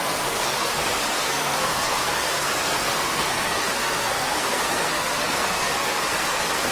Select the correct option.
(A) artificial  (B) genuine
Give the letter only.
A